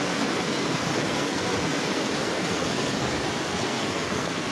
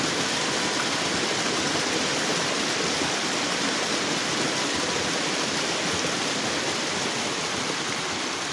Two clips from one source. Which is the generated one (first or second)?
first